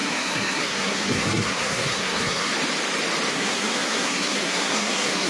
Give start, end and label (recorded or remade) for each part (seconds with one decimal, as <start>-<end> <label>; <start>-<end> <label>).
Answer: 0.0-2.5 remade; 2.5-3.3 recorded; 3.3-5.3 remade